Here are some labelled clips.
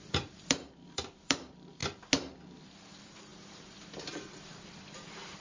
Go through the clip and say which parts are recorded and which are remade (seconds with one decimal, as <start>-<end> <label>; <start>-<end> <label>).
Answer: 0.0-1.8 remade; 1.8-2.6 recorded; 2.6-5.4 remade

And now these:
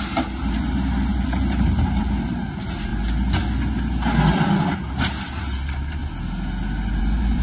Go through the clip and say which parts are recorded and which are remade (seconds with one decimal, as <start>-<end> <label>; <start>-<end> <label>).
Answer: 0.0-2.9 remade; 2.9-5.0 recorded; 5.0-6.0 remade; 6.0-7.0 recorded; 7.0-7.4 remade

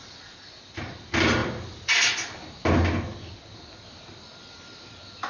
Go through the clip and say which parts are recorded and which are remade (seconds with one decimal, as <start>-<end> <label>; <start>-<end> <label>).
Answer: 0.0-5.3 recorded

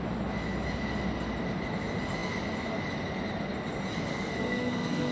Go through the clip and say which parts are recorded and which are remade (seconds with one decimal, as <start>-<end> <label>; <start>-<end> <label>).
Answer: 0.0-4.1 recorded; 4.1-5.1 remade

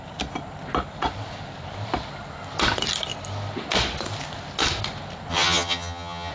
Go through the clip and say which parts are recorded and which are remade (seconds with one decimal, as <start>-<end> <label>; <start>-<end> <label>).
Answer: 0.0-5.3 recorded; 5.3-6.3 remade